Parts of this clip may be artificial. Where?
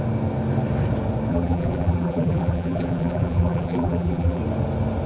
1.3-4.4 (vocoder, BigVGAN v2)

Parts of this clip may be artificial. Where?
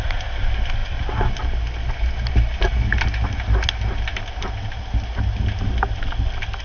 none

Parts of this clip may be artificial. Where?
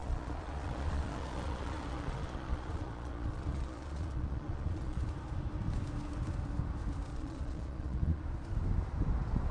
0.0-5.0 (vocoder, Vocos); 7.1-8.2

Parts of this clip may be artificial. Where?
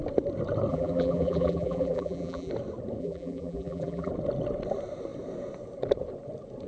0.7-2.5 (vocoder, BigVGAN v2); 3.0-4.1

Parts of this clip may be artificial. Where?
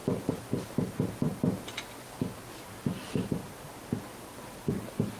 0.0-2.2 (vocoder, BigVGAN v2); 3.4-4.0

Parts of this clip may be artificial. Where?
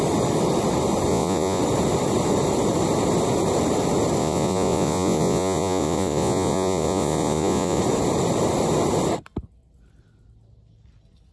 1.1-1.6 (vocoder, Vocos); 4.2-7.8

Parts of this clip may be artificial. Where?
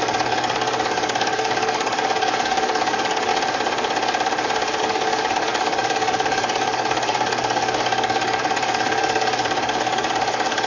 0.0-3.3 (codec, DAC); 4.8-10.7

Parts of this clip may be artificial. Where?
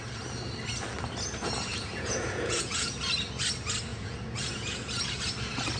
1.7-3.0 (vocoder, Vocos); 3.9-5.2